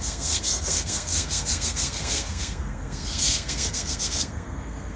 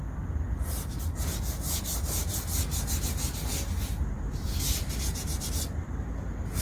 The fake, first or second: first